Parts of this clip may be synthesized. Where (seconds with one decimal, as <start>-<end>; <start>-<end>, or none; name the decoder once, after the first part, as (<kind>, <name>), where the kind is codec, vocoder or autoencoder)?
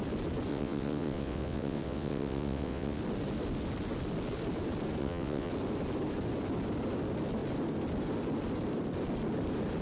0.5-3.0 (vocoder, WaveNeXt); 5.0-5.5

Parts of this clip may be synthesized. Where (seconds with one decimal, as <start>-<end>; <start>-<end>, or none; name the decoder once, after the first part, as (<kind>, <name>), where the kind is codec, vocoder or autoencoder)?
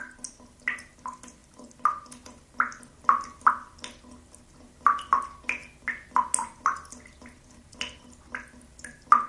none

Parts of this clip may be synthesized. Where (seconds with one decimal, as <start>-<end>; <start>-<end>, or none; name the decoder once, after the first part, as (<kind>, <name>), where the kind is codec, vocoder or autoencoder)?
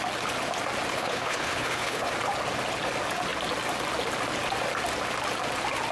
0.9-2.1 (codec, HILCodec)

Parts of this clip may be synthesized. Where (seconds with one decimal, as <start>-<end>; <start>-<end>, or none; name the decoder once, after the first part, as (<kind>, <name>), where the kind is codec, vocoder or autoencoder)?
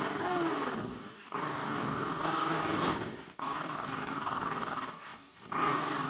0.0-6.1 (codec, DAC)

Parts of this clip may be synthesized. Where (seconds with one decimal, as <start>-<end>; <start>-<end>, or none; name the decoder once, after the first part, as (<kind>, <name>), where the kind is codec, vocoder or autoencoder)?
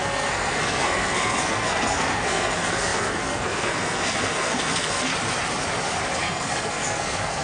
0.0-5.1 (codec, SNAC); 6.2-7.4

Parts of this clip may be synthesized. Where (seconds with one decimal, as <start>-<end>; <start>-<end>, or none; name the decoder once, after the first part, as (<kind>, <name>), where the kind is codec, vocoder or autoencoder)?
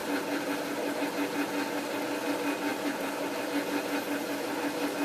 0.0-1.0 (vocoder, BigVGAN v2); 2.7-3.4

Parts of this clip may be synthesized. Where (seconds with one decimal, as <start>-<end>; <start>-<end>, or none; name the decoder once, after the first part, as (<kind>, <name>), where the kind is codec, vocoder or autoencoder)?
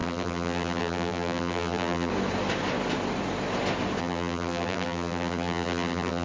0.0-2.1 (vocoder, BigVGAN v2); 4.0-6.2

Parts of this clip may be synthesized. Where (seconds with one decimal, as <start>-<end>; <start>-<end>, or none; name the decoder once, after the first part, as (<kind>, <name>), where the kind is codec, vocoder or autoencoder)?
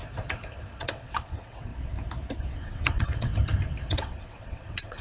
0.8-1.7 (vocoder, WaveNeXt); 2.4-3.3; 3.9-5.0